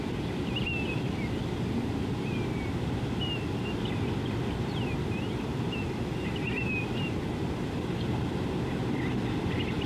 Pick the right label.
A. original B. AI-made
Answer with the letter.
A